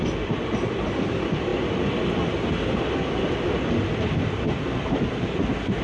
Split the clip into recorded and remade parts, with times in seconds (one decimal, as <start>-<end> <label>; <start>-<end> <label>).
0.0-1.5 remade; 1.5-4.9 recorded; 4.9-5.8 remade